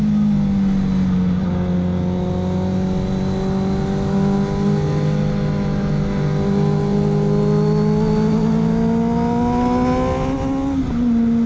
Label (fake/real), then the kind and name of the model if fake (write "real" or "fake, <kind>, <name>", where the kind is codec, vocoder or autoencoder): real